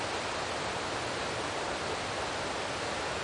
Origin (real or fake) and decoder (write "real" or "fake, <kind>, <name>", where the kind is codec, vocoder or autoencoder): real